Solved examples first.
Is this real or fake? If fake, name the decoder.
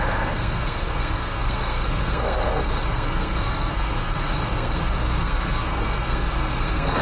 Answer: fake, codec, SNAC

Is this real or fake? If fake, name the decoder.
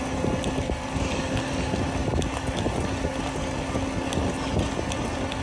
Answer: real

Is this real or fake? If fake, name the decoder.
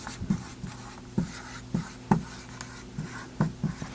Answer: real